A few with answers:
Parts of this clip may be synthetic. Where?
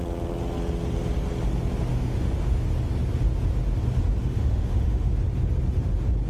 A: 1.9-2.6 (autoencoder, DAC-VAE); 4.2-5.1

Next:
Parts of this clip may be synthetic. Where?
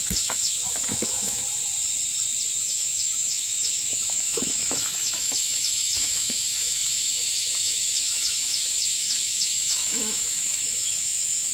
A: 0.0-1.4 (autoencoder, DAC-VAE); 2.6-11.5